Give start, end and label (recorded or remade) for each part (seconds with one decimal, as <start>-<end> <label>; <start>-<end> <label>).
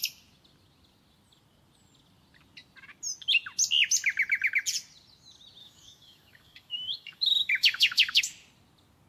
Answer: 0.0-5.6 recorded; 5.6-8.2 remade; 8.2-9.1 recorded